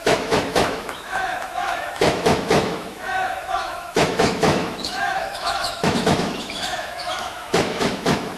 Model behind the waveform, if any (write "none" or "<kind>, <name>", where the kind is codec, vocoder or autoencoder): autoencoder, DAC-VAE